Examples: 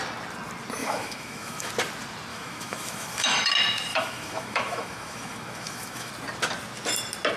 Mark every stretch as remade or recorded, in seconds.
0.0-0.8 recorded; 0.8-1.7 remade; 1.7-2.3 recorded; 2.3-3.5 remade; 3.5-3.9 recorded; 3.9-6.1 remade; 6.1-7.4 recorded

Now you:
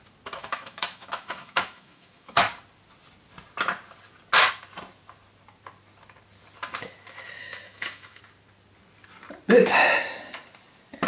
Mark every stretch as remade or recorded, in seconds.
0.0-0.4 recorded; 0.4-2.4 remade; 2.4-7.4 recorded; 7.4-8.2 remade; 8.2-11.1 recorded

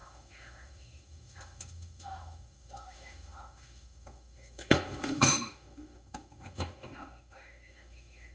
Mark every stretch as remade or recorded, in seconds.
0.0-8.3 remade

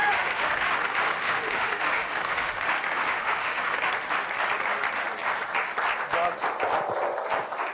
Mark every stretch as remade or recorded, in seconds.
0.0-3.9 remade; 3.9-7.7 recorded